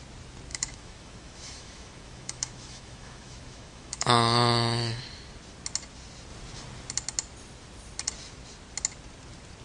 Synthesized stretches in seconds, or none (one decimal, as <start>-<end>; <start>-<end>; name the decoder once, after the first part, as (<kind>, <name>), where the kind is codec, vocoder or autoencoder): 0.5-5.0 (autoencoder, DAC-VAE)